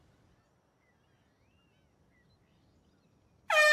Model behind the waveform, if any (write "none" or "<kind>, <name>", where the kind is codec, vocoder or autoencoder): none